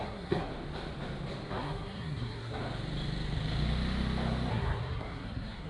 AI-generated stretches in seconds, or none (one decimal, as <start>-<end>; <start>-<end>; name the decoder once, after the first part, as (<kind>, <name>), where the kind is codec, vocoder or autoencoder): 0.0-0.5 (codec, SNAC); 1.5-2.6; 4.5-5.7

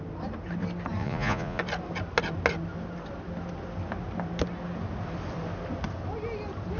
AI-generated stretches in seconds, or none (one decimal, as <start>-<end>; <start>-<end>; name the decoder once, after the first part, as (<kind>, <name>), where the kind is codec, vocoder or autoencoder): 1.0-1.6 (vocoder, Vocos)